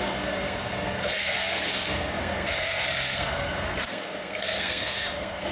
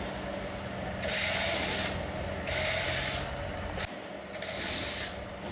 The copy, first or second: first